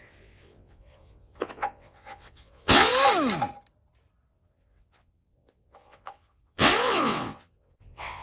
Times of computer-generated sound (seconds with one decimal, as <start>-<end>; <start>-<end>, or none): 0.0-2.9; 4.3-8.2